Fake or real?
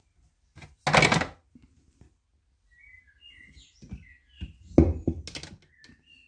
real